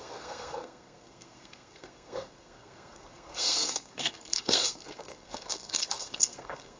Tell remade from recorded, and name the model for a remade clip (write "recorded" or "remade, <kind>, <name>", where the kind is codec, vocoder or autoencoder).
remade, codec, SNAC